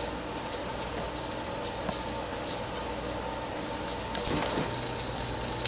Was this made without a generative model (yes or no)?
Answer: yes